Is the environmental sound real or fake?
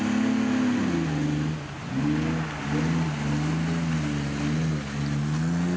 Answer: real